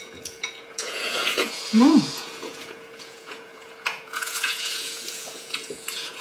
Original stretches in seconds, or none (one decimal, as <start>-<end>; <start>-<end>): none